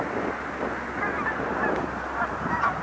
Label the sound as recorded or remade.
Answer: recorded